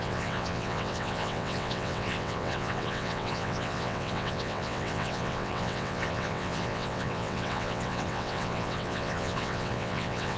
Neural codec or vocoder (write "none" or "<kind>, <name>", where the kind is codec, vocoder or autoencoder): vocoder, WaveNeXt